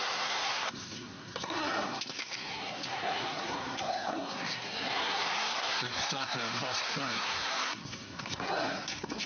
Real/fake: fake